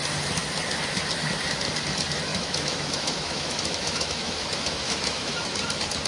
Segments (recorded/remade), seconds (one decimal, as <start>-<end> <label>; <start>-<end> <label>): 0.0-2.3 recorded; 2.3-5.3 remade; 5.3-6.1 recorded